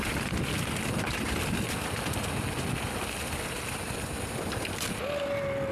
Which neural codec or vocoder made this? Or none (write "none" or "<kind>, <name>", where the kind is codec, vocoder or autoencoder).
none